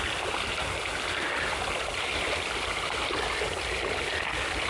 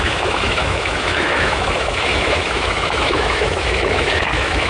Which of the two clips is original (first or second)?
first